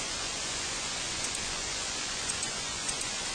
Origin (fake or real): fake